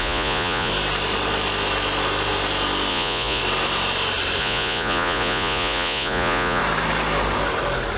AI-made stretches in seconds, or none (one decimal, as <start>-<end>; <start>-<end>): 0.0-0.7; 2.9-3.4; 4.4-6.6